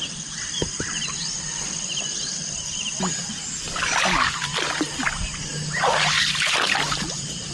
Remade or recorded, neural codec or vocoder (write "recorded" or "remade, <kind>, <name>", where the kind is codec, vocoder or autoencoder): recorded